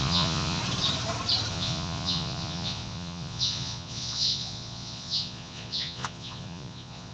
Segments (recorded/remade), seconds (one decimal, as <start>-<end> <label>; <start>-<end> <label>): 0.0-0.6 remade; 0.6-1.5 recorded; 1.5-7.1 remade